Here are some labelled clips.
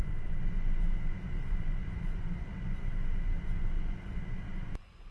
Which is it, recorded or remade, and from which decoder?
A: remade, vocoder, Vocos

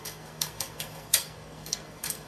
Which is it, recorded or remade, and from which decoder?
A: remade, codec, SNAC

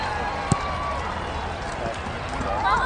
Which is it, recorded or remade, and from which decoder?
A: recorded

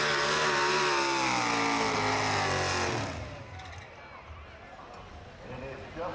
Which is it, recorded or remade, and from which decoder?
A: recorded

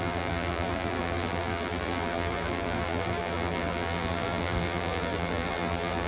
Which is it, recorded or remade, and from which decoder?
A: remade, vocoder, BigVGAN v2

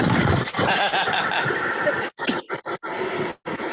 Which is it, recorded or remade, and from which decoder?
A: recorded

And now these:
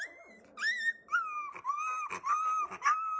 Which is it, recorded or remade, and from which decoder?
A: recorded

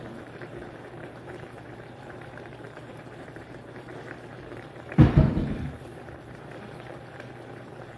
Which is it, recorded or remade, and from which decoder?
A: remade, vocoder, BigVGAN v2